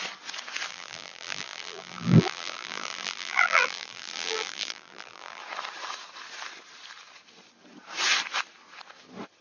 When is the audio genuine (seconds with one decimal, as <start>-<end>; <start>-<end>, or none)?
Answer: 0.0-0.7; 5.4-9.4